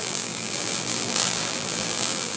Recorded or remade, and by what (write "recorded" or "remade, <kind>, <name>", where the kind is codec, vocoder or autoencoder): remade, vocoder, BigVGAN v2